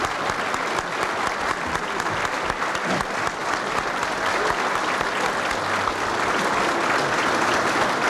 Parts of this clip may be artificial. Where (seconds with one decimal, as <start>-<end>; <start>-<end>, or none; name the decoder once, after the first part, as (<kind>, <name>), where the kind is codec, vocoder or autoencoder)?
none